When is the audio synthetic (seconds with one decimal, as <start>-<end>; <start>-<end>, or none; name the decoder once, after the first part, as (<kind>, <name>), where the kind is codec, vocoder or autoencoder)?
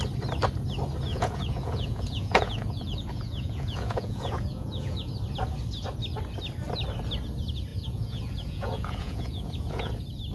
1.1-5.1 (vocoder, Vocos); 7.7-9.9